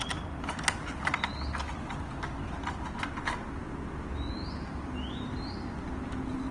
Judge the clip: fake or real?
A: real